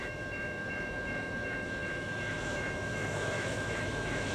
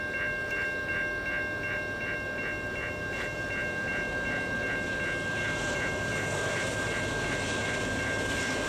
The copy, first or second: first